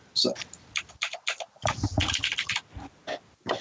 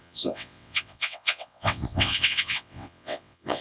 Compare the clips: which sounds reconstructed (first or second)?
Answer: second